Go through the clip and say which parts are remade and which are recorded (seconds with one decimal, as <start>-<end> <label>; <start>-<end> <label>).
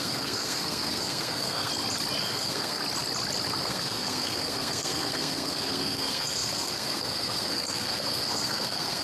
0.0-1.7 remade; 1.7-2.2 recorded; 2.2-2.8 remade; 2.8-3.6 recorded; 3.6-9.0 remade